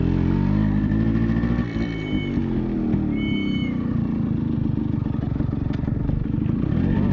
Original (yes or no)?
yes